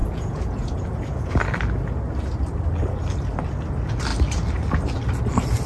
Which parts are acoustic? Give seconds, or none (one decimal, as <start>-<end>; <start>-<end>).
1.3-5.7